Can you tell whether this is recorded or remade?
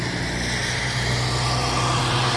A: recorded